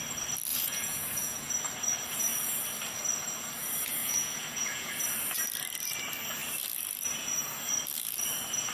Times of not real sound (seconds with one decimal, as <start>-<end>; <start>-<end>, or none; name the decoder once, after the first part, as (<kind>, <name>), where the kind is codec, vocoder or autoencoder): 0.5-1.5 (vocoder, Vocos); 4.0-4.9

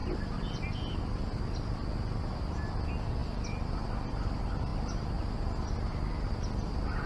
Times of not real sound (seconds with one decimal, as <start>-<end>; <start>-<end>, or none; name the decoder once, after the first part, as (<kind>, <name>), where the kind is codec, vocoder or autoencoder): none

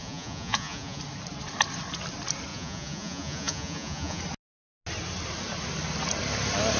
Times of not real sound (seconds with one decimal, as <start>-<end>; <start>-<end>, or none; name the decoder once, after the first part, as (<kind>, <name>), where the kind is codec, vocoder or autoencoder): 0.0-1.0 (vocoder, Vocos); 2.5-4.2

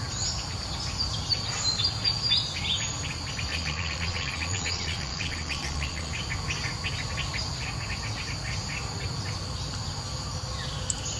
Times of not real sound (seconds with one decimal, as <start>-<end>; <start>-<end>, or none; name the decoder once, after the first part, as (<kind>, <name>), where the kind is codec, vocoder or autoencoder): 3.5-6.1 (vocoder, Vocos)

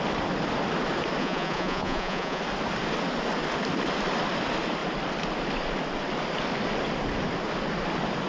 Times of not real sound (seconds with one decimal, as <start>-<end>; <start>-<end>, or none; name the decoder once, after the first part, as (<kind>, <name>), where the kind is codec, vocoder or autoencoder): 1.2-2.4 (vocoder, Vocos)